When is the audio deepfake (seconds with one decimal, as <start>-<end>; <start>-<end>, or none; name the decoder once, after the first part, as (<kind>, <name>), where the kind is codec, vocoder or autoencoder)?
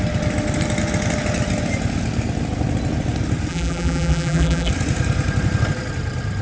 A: 3.5-4.7 (vocoder, BigVGAN v2)